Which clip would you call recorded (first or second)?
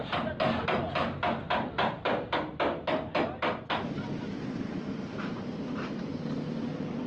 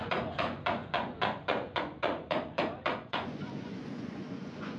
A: first